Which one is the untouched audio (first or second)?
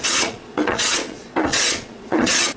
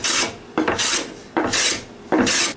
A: second